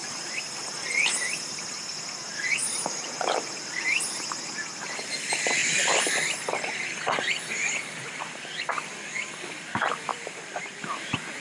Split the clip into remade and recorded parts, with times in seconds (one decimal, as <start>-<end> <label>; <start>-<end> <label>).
0.0-0.6 remade; 0.6-2.6 recorded; 2.6-3.8 remade; 3.8-5.6 recorded; 5.6-7.5 remade; 7.5-10.1 recorded; 10.1-10.7 remade; 10.7-11.4 recorded